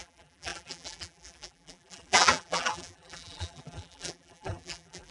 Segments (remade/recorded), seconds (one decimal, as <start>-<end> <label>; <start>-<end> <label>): 0.0-5.1 remade